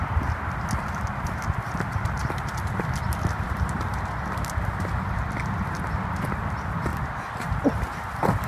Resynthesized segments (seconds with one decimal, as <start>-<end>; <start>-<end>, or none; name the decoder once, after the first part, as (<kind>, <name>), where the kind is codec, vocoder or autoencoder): 2.2-5.8 (vocoder, BigVGAN v2)